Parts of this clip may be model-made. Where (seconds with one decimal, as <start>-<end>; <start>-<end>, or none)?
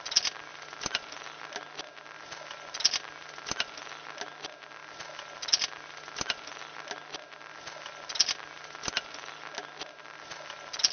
none